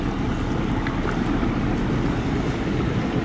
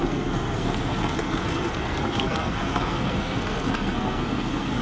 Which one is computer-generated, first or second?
second